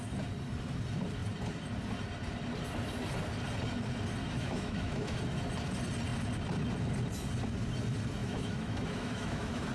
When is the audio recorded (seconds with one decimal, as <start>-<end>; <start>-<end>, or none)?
0.0-4.2; 5.2-8.2